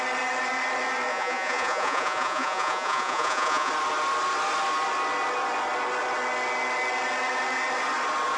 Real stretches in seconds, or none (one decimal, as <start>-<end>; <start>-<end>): 0.0-1.1; 3.7-8.4

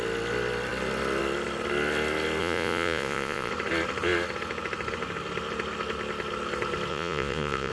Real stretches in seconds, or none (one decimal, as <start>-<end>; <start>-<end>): 0.0-2.4; 3.5-6.9

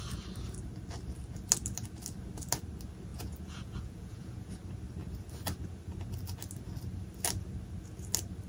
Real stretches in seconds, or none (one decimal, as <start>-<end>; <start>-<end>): 0.0-3.1; 4.5-8.5